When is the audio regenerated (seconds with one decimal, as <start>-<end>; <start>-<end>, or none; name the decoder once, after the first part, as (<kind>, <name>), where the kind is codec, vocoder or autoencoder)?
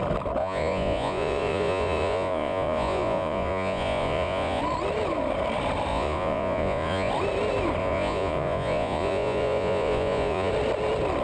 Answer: 0.4-4.6 (vocoder, Vocos); 5.9-7.1; 7.8-10.5